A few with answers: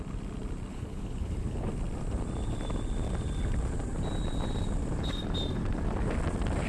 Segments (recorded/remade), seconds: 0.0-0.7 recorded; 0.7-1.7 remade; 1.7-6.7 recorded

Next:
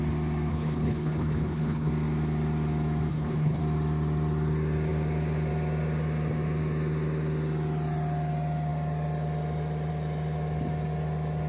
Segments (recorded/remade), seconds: 0.0-0.5 recorded; 0.5-1.9 remade; 1.9-3.1 recorded; 3.1-3.6 remade; 3.6-11.5 recorded

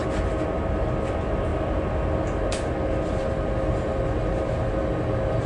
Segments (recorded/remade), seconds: 0.0-5.5 recorded

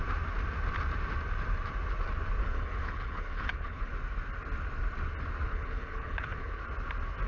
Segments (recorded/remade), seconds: 0.0-2.4 recorded; 2.4-3.9 remade; 3.9-5.5 recorded; 5.5-6.6 remade; 6.6-7.3 recorded